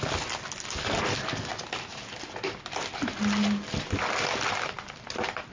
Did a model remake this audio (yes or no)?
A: no